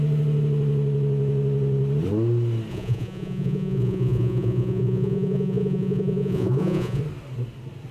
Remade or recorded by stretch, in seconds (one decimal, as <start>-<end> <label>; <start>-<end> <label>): 0.0-2.7 recorded; 2.7-7.0 remade; 7.0-7.9 recorded